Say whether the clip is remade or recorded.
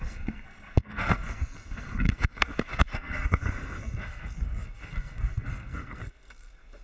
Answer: remade